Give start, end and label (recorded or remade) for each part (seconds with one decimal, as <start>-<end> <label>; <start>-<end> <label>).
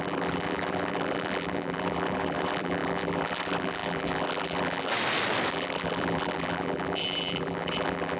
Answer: 0.0-4.9 remade; 4.9-5.5 recorded; 5.5-8.2 remade